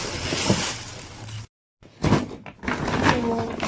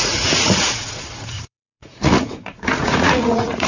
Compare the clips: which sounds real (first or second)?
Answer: first